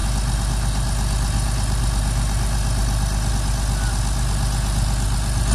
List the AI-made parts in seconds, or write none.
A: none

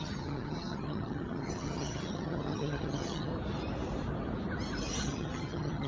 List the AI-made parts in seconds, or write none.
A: 0.0-3.3 (vocoder, HiFi-GAN); 5.0-5.9

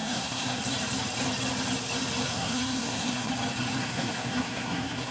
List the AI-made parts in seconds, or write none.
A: 0.0-0.6 (codec, SNAC); 2.3-3.3; 3.8-5.1

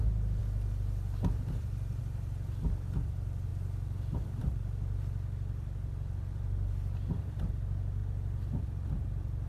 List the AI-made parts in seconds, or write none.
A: none

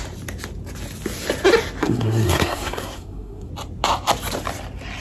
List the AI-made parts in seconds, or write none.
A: 1.8-3.5 (codec, SNAC)

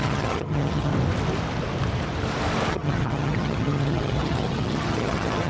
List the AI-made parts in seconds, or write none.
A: 0.0-0.9 (vocoder, HiFi-GAN); 2.7-5.5

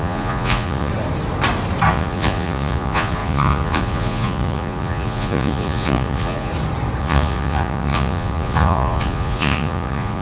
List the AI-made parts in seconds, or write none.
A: 0.0-0.9 (vocoder, Vocos); 1.9-6.5; 7.0-10.2